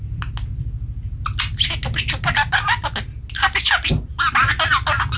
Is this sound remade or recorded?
recorded